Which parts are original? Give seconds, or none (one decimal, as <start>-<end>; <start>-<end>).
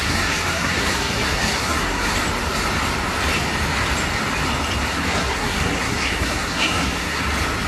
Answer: 2.1-4.9; 7.3-7.7